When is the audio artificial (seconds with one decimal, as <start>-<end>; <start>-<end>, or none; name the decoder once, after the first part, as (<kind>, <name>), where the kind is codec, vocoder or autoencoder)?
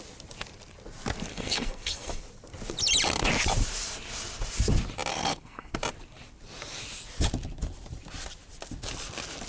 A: 1.3-2.2 (codec, SNAC); 5.1-5.7